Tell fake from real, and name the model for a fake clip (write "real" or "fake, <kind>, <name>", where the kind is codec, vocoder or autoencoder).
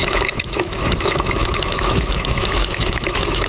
fake, autoencoder, DAC-VAE